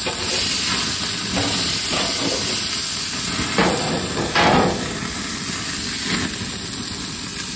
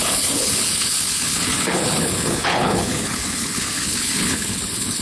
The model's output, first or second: second